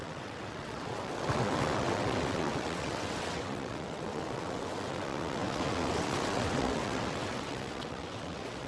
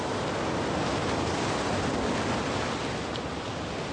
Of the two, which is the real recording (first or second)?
second